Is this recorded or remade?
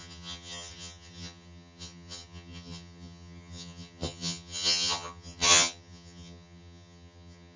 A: remade